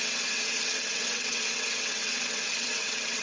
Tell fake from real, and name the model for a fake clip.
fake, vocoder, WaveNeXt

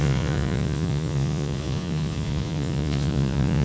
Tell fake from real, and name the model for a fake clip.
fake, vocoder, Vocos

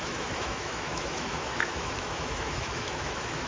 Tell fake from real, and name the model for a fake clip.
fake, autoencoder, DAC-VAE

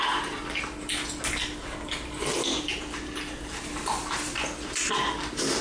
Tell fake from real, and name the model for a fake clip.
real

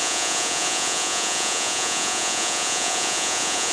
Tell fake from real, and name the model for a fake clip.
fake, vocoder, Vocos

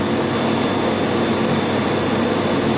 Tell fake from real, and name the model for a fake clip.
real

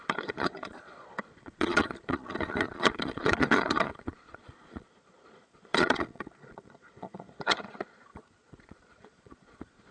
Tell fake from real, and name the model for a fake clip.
fake, vocoder, Vocos